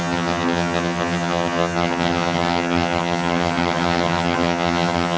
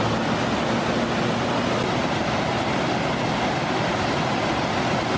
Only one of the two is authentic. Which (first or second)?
second